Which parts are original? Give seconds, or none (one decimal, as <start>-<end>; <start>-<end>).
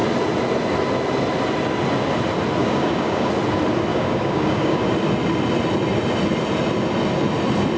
0.0-2.6; 3.3-3.9; 4.8-7.8